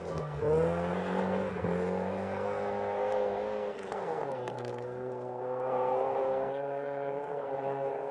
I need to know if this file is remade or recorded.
remade